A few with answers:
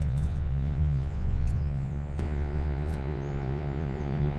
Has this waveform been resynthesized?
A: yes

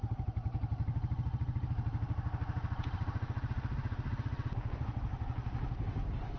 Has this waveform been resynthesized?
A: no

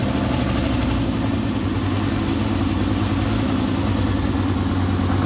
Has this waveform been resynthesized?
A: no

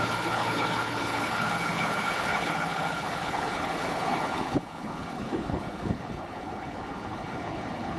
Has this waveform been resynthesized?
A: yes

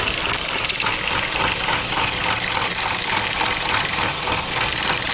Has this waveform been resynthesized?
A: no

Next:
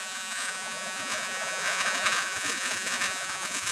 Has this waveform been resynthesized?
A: yes